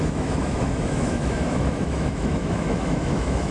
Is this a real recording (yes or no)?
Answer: no